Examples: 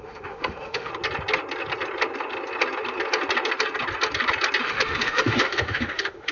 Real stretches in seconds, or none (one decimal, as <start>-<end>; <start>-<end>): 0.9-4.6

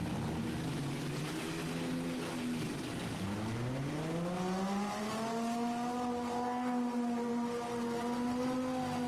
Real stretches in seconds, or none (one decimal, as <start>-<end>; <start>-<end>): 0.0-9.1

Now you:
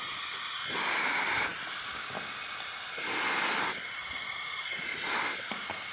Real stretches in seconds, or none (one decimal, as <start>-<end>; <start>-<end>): 0.0-5.9

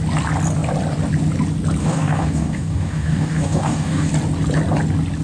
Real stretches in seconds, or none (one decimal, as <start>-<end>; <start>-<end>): 0.0-1.8; 4.1-5.2